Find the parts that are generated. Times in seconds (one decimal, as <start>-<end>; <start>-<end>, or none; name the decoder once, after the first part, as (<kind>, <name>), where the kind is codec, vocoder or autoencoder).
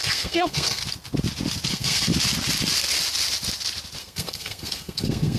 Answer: 0.0-0.8 (codec, SNAC); 1.7-2.1; 4.0-5.4